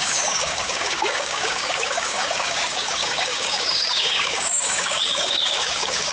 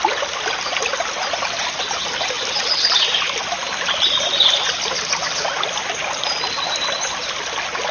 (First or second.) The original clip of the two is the second